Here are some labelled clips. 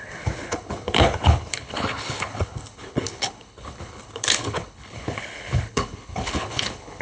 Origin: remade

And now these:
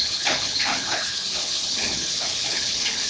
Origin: remade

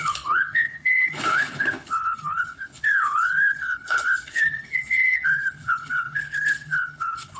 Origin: remade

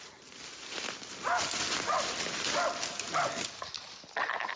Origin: recorded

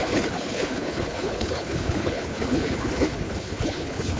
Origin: remade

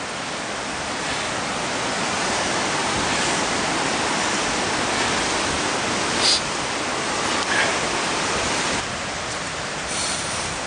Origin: recorded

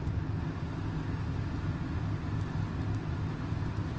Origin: recorded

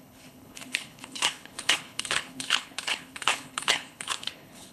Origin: remade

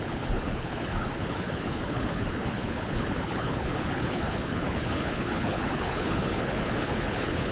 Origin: remade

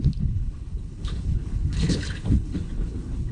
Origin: remade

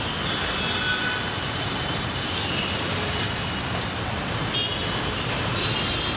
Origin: recorded